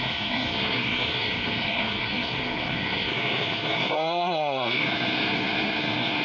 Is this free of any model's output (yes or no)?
no